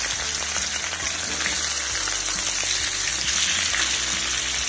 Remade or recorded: recorded